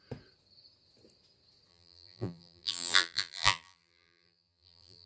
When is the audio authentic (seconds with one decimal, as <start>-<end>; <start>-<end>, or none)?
0.0-1.7